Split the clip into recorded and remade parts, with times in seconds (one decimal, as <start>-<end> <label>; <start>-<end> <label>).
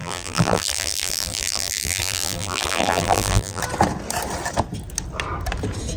0.0-3.6 remade; 3.6-6.0 recorded